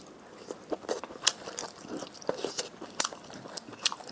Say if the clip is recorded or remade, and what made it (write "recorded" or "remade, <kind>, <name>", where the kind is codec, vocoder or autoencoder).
remade, vocoder, BigVGAN v2